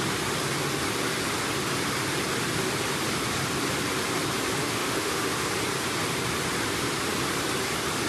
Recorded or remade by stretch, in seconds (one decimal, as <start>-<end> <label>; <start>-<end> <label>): 0.0-4.6 recorded; 4.6-5.5 remade; 5.5-8.1 recorded